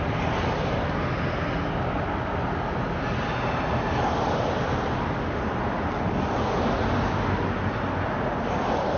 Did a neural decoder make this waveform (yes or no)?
no